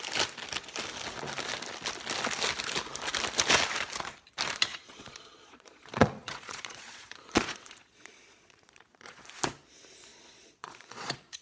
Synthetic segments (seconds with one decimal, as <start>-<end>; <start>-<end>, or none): 4.7-9.2; 10.1-11.4